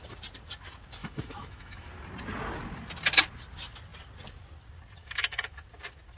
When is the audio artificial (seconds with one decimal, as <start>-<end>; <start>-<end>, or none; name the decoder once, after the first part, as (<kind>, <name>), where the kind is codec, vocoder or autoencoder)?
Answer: 1.0-1.9 (autoencoder, DAC-VAE); 5.0-5.6